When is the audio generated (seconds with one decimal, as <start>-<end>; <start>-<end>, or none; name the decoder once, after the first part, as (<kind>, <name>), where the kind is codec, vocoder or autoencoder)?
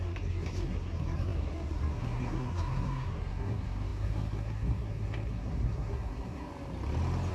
0.0-6.5 (codec, SNAC)